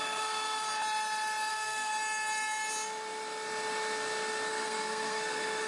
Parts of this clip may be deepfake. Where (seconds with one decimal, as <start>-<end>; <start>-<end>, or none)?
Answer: 0.0-0.7; 1.5-1.9; 4.5-5.7